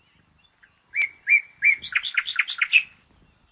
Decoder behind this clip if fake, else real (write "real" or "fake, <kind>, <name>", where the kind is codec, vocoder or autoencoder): real